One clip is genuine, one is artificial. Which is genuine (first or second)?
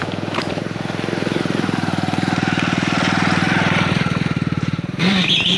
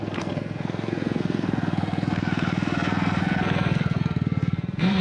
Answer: first